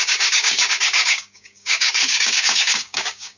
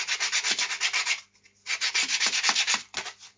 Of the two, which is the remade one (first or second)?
first